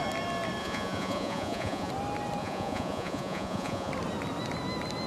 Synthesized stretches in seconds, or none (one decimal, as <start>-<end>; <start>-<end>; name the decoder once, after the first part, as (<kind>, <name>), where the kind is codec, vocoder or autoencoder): 0.6-1.9 (vocoder, Vocos); 2.4-3.9